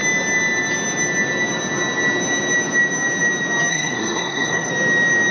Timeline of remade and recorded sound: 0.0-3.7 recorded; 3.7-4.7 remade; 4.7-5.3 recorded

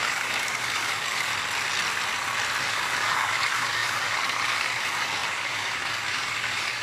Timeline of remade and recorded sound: 0.0-1.3 remade; 1.3-2.6 recorded; 2.6-6.8 remade